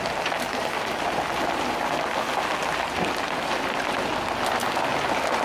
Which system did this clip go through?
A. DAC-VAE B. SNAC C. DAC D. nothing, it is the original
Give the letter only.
D